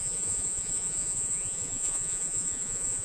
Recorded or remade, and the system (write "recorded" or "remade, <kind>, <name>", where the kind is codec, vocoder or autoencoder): remade, vocoder, Vocos